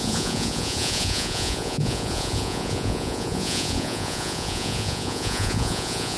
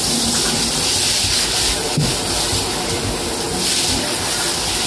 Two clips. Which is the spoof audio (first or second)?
first